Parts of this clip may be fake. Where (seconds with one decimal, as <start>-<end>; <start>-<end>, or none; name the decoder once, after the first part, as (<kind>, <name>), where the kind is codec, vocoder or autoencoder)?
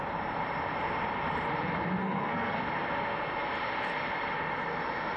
2.0-2.6 (codec, SNAC)